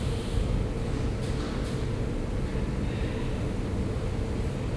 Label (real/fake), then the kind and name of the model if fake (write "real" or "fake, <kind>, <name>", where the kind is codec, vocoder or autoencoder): real